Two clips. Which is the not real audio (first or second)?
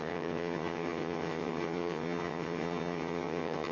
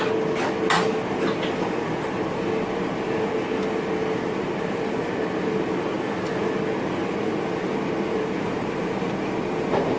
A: first